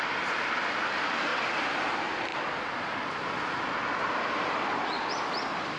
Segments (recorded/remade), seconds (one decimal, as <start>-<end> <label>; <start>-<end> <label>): 0.0-5.8 recorded